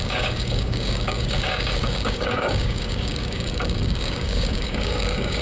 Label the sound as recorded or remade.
remade